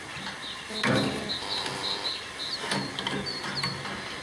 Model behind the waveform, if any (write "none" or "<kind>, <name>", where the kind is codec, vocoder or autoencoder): none